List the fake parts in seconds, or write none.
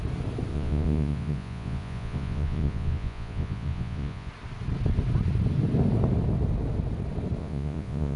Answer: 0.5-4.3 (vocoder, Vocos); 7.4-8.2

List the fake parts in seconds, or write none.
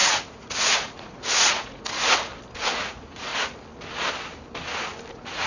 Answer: 0.0-2.3 (vocoder, Vocos); 2.8-3.3; 5.1-5.5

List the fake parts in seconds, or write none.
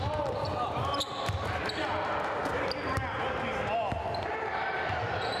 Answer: none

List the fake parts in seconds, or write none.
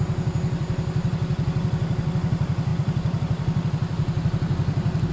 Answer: none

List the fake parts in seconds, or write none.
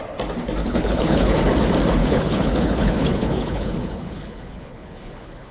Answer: 0.6-1.4 (codec, HILCodec); 2.0-5.5